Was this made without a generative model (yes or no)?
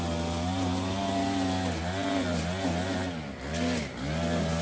yes